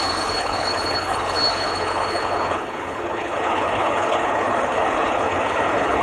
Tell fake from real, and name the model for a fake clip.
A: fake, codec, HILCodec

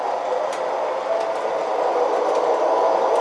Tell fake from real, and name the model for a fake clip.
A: real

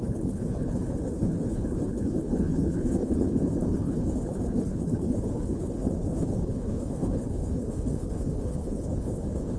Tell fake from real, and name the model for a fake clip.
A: fake, codec, HILCodec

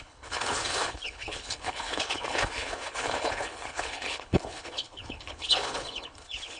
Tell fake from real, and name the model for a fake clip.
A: fake, codec, HILCodec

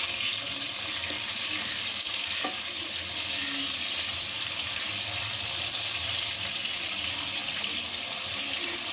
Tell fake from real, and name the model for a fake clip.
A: real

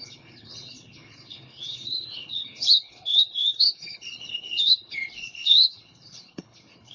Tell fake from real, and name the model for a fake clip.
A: fake, codec, HILCodec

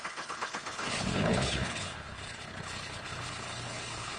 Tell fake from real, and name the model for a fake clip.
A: fake, codec, HILCodec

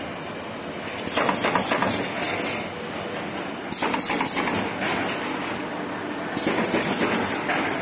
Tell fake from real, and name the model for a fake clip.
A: real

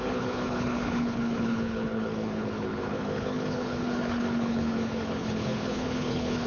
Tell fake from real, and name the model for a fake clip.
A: fake, codec, HILCodec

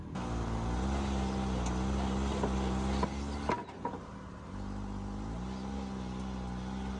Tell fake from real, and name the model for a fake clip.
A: real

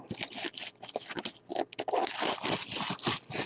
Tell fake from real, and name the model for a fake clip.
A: real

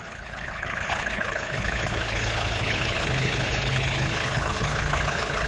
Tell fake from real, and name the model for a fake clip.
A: fake, codec, HILCodec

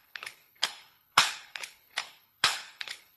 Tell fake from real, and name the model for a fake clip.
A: fake, codec, HILCodec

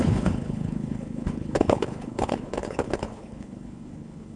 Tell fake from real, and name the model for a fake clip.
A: fake, codec, HILCodec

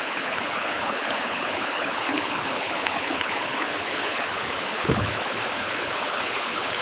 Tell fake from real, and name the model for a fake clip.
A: fake, codec, HILCodec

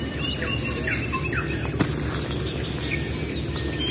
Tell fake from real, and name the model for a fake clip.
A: real